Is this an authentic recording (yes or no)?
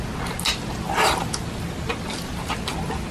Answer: yes